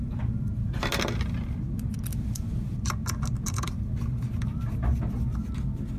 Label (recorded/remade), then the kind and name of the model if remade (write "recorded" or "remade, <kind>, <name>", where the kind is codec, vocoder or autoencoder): recorded